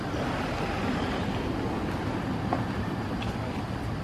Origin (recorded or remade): recorded